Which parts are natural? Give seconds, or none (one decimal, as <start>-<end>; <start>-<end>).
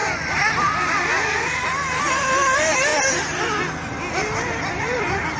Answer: 2.9-4.6